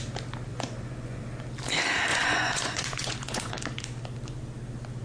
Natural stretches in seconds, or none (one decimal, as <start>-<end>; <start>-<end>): 0.0-0.5; 1.2-2.1; 3.5-5.0